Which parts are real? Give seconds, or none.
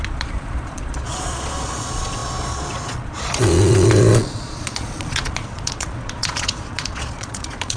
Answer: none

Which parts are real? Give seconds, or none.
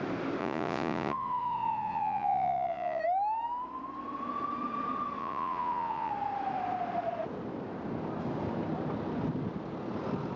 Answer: 0.0-0.4; 3.0-5.2; 6.1-10.4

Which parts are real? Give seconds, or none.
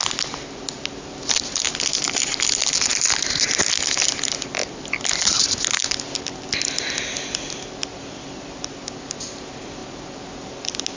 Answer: 0.0-11.0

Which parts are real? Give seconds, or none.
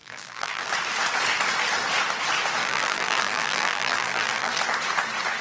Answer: 0.7-2.6; 4.6-5.4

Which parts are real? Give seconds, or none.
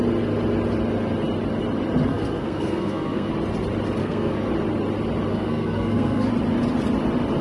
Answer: 0.0-2.1; 3.3-4.0; 4.5-5.3; 6.3-7.4